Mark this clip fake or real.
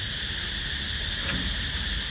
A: real